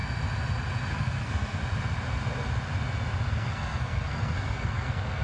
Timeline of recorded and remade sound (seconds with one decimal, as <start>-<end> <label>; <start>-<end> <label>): 0.0-0.9 recorded; 0.9-1.6 remade; 1.6-3.3 recorded; 3.3-5.2 remade